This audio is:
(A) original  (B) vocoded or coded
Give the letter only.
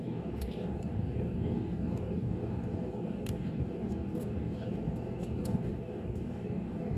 B